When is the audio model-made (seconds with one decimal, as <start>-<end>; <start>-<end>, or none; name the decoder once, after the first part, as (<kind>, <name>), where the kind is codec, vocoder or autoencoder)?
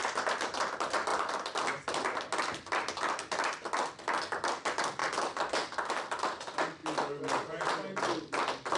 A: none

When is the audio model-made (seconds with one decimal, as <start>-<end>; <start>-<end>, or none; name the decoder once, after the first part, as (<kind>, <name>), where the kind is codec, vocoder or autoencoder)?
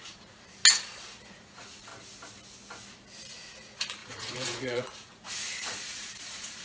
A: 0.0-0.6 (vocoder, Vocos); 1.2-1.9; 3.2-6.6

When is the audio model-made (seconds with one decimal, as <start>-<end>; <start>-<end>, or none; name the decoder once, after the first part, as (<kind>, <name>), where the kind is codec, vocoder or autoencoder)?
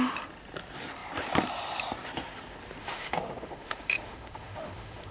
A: 2.8-5.1 (autoencoder, DAC-VAE)